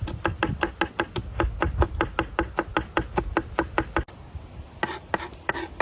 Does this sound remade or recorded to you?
recorded